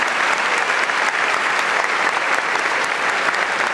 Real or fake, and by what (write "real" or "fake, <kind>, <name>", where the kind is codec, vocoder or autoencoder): fake, vocoder, BigVGAN v2